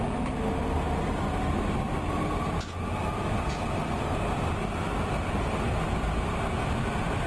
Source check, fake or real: real